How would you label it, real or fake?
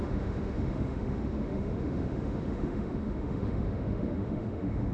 fake